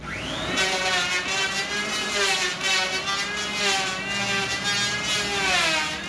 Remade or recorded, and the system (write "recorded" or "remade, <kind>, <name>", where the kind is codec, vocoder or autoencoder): recorded